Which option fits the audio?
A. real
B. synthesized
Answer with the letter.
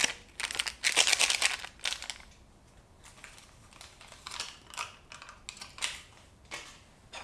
A